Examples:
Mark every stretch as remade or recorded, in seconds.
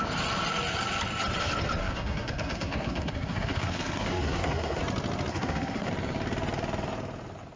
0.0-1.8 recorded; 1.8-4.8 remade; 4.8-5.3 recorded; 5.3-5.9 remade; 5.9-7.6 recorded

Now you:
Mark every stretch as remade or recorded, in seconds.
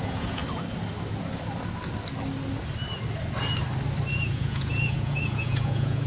0.0-0.4 remade; 0.4-4.1 recorded; 4.1-6.1 remade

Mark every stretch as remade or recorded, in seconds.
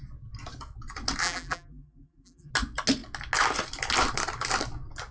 0.0-1.2 recorded; 1.2-2.5 remade; 2.5-5.1 recorded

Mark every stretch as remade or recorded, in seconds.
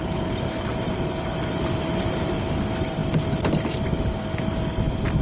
0.0-0.7 recorded; 0.7-2.3 remade; 2.3-5.2 recorded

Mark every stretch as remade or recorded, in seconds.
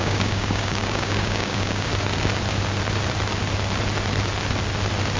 0.0-1.9 remade; 1.9-5.2 recorded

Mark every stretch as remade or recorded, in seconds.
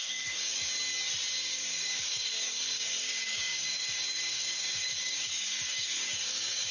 0.0-0.7 remade; 0.7-1.4 recorded; 1.4-6.7 remade